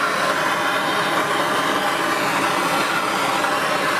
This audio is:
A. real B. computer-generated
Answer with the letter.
A